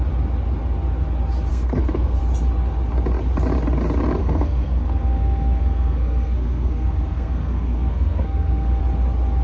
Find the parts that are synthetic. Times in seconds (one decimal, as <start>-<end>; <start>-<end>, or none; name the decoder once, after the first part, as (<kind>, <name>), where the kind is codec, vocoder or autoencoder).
1.5-2.2 (codec, SNAC); 4.2-8.8